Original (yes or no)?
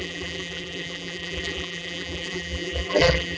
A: no